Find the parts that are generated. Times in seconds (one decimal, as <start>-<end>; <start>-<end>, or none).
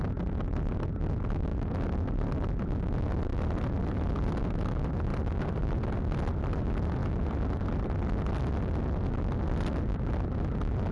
3.3-4.4; 5.1-6.6